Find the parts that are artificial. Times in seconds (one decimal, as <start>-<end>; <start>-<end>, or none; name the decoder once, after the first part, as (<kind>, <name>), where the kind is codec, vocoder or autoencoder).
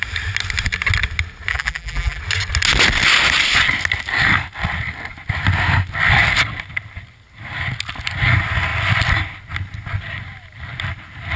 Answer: 1.5-2.2 (vocoder, BigVGAN v2)